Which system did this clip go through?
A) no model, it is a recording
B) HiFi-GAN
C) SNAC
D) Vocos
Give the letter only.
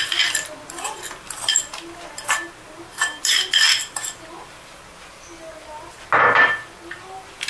A